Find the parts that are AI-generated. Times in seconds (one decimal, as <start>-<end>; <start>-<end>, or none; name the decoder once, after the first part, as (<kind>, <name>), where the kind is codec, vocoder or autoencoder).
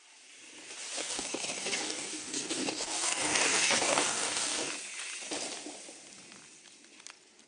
1.0-4.7 (codec, DAC)